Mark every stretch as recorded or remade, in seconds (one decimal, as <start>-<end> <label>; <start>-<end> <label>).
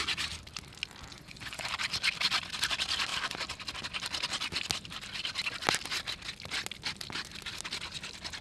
0.0-1.1 recorded; 1.1-1.7 remade; 1.7-8.4 recorded